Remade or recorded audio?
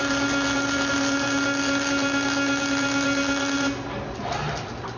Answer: recorded